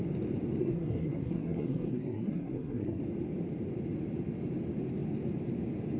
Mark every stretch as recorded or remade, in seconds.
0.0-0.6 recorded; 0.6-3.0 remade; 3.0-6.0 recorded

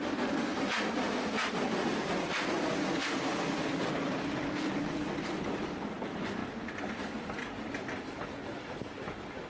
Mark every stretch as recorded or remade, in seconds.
0.0-9.5 recorded

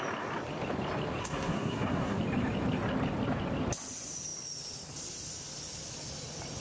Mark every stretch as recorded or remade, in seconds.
0.0-1.2 recorded; 1.2-2.2 remade; 2.2-6.6 recorded

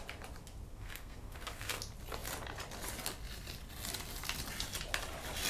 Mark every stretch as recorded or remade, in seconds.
0.0-0.7 recorded; 0.7-1.8 remade; 1.8-5.5 recorded

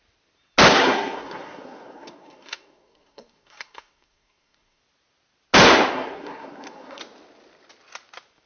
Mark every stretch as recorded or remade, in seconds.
0.0-0.7 recorded; 0.7-4.8 remade; 4.8-5.9 recorded; 5.9-7.0 remade; 7.0-8.5 recorded

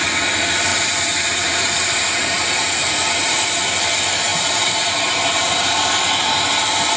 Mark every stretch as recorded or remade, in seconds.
0.0-0.7 recorded; 0.7-3.6 remade; 3.6-4.3 recorded; 4.3-5.8 remade; 5.8-7.0 recorded